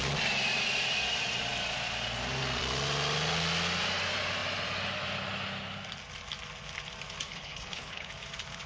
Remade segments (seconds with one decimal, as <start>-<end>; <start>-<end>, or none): 7.3-8.1

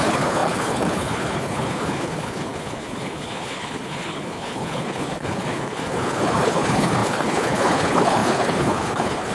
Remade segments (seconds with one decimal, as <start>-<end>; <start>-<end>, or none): 0.0-9.3

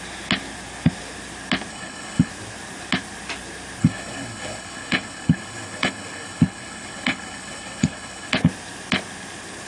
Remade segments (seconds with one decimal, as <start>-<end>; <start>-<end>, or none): 1.7-2.3; 3.8-8.3